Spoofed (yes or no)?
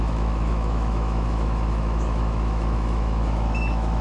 yes